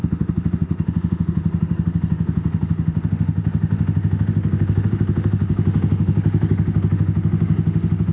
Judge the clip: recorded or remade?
remade